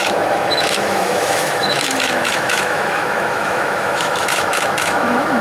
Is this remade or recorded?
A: remade